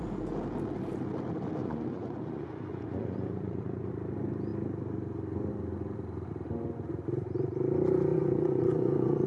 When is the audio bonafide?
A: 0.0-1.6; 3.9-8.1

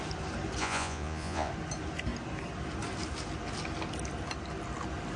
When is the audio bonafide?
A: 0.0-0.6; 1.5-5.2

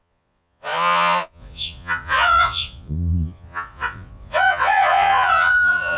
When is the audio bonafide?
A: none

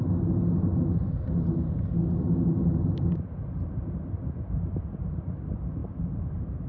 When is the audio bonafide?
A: 0.0-6.7